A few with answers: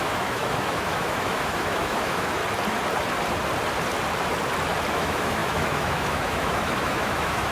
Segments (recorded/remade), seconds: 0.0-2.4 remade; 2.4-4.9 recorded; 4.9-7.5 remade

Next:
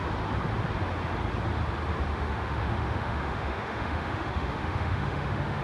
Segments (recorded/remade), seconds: 0.0-2.1 recorded; 2.1-5.6 remade

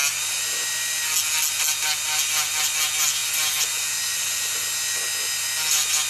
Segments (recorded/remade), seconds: 0.0-6.1 recorded

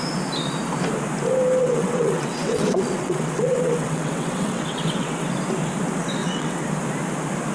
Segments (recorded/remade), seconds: 0.0-1.6 recorded; 1.6-5.3 remade; 5.3-6.2 recorded; 6.2-6.7 remade; 6.7-7.5 recorded

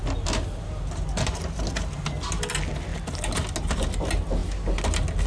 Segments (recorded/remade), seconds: 0.0-5.3 recorded

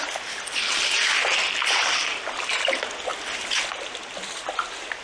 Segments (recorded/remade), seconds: 0.0-5.0 recorded

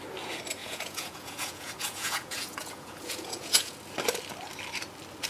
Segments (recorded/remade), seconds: 0.0-0.6 recorded; 0.6-3.8 remade; 3.8-5.3 recorded

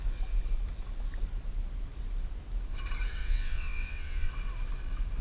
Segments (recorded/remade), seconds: 0.0-3.2 recorded; 3.2-4.3 remade; 4.3-5.2 recorded